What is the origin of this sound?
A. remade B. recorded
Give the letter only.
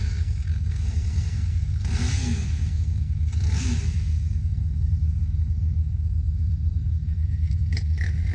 A